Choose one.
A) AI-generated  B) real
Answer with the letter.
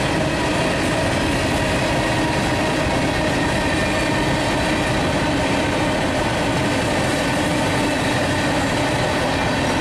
B